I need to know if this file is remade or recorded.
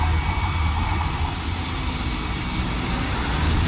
recorded